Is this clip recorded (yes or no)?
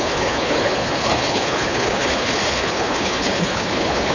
no